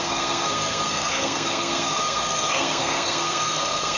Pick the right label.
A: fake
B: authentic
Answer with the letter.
A